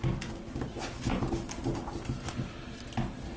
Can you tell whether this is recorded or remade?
recorded